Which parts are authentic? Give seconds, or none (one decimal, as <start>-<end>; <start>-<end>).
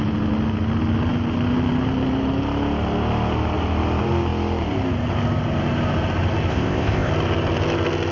0.0-6.5; 7.1-8.1